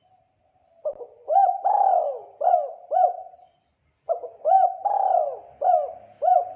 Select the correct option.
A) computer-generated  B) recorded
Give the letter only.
B